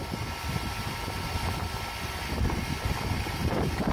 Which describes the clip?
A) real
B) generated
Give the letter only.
A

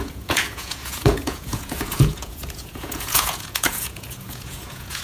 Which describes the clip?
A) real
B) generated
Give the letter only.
B